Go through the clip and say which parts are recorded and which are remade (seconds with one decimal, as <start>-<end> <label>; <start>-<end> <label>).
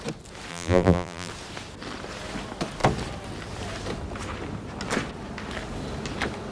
0.0-0.5 recorded; 0.5-1.3 remade; 1.3-6.5 recorded